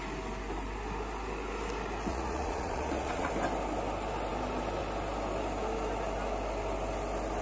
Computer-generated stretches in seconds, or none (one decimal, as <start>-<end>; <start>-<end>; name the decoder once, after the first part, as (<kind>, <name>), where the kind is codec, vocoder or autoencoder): 2.1-3.3 (vocoder, Vocos)